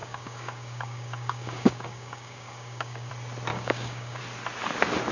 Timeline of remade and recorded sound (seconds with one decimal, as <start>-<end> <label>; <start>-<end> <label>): 0.0-3.1 remade; 3.1-3.5 recorded; 3.5-4.2 remade; 4.2-5.1 recorded